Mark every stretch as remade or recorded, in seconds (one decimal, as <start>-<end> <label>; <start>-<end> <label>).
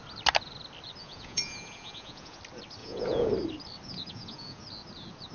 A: 0.0-1.0 recorded; 1.0-2.4 remade; 2.4-2.8 recorded; 2.8-3.3 remade; 3.3-3.9 recorded; 3.9-4.6 remade; 4.6-5.3 recorded